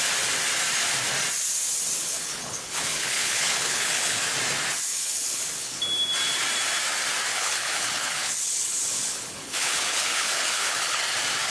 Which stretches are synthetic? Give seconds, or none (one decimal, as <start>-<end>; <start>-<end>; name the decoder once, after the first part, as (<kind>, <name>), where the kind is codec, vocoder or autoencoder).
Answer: 2.0-4.2 (codec, HILCodec); 4.9-5.8; 7.3-11.0